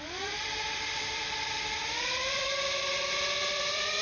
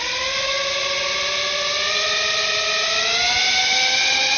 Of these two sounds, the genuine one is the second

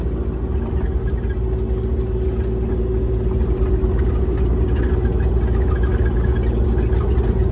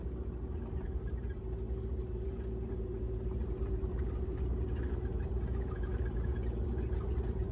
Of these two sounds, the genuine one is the first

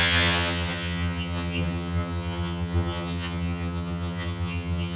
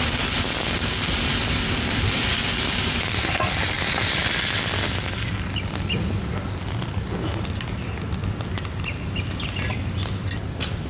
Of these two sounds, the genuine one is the second